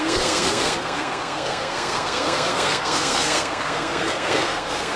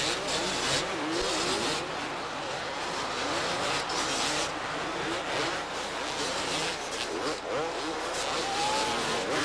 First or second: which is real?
second